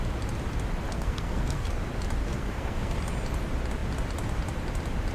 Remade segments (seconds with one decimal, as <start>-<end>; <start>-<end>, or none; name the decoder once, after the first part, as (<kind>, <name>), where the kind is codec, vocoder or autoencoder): 0.9-1.8 (codec, SNAC); 2.2-3.0